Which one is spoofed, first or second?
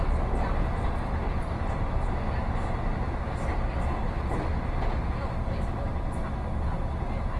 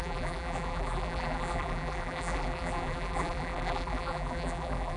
second